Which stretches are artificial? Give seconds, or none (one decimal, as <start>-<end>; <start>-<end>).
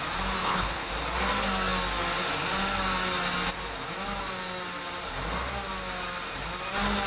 0.4-0.9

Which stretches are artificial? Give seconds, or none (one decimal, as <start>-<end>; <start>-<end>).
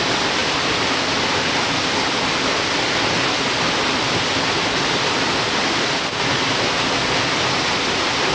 none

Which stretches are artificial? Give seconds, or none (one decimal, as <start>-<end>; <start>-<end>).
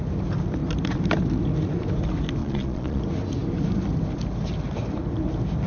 2.4-3.0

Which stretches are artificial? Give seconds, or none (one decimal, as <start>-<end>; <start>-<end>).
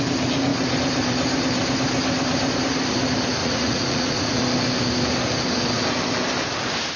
3.4-4.4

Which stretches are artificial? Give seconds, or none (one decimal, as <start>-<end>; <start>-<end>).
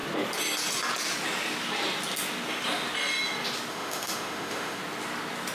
3.7-4.8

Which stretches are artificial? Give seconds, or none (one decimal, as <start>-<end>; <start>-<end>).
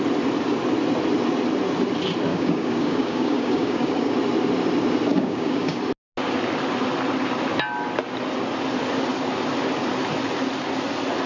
2.3-4.1; 5.1-5.8